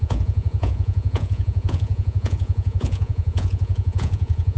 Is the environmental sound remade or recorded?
remade